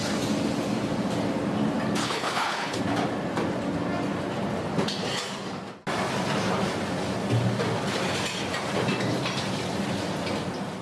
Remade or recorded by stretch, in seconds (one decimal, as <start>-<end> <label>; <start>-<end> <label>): 0.0-2.0 recorded; 2.0-2.8 remade; 2.8-10.8 recorded